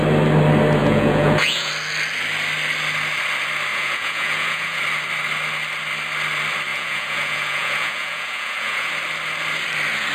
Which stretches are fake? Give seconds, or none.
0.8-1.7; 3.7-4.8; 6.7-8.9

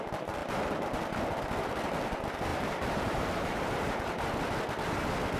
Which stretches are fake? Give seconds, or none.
2.5-4.2

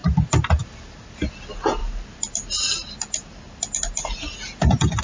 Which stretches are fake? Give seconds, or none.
none

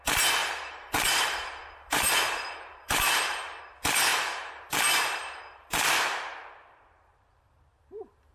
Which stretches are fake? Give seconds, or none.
0.4-3.6; 4.1-8.3